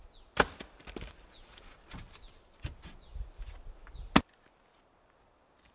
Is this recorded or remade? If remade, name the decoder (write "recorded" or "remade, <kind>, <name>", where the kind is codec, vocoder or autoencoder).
recorded